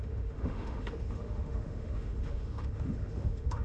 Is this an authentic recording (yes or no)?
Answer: no